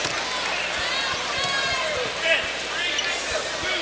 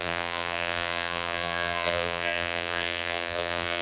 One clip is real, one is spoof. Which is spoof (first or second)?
second